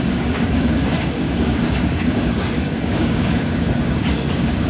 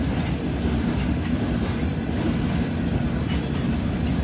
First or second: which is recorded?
second